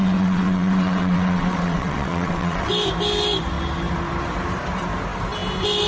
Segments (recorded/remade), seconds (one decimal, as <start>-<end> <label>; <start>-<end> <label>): 0.0-2.7 remade; 2.7-5.9 recorded